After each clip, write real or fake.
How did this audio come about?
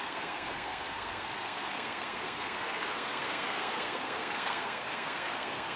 fake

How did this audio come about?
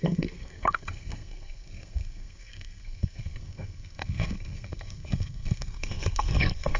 fake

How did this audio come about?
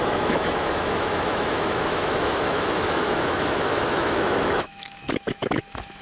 fake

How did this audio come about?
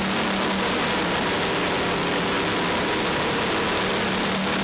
real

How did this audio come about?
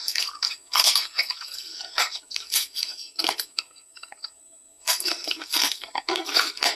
fake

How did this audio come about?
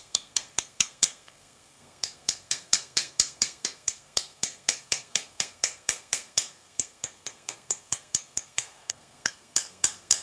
fake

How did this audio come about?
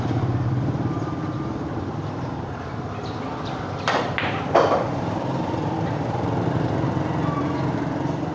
fake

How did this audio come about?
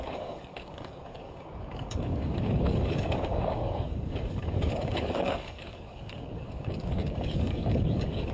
fake